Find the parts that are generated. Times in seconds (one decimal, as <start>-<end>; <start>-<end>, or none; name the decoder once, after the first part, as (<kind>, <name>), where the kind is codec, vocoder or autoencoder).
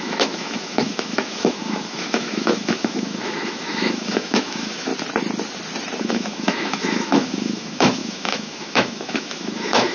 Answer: 0.0-4.9 (autoencoder, DAC-VAE); 6.0-9.9